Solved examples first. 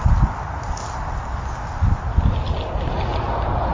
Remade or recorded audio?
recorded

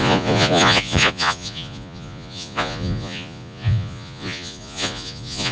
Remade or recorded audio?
remade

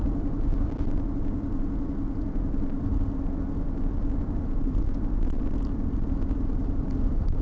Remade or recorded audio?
recorded